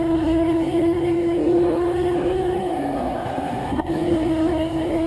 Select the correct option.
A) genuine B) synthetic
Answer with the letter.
B